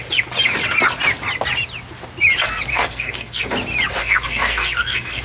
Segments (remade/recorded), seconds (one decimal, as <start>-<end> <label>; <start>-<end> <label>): 0.0-2.7 recorded; 2.7-3.5 remade; 3.5-4.0 recorded; 4.0-5.2 remade